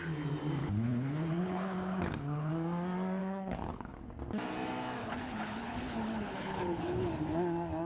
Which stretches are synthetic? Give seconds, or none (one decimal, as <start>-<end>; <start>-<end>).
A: 0.6-2.5; 3.2-4.1; 5.0-7.1